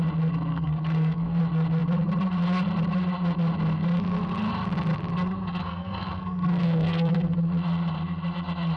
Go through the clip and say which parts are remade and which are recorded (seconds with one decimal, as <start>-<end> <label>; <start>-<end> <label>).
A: 0.0-0.5 recorded; 0.5-1.4 remade; 1.4-5.6 recorded; 5.6-7.4 remade; 7.4-8.8 recorded